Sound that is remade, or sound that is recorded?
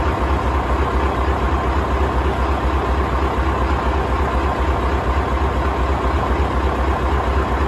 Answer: recorded